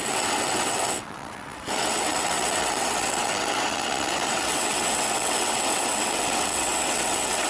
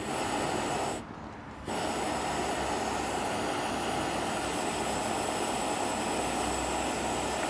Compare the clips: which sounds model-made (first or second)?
first